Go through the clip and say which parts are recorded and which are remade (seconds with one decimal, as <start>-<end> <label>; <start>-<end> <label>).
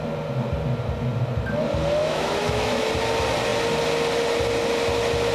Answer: 0.0-2.0 recorded; 2.0-2.9 remade; 2.9-5.3 recorded